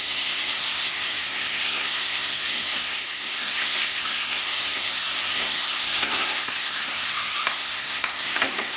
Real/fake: fake